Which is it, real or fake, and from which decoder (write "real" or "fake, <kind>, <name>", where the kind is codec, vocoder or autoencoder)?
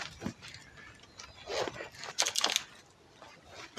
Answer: real